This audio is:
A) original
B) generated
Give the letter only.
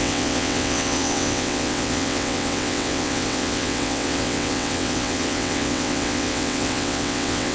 B